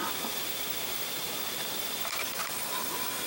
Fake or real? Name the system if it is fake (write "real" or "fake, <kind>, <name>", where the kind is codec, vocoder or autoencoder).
fake, vocoder, BigVGAN v2